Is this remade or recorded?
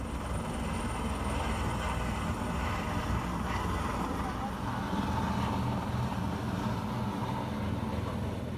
recorded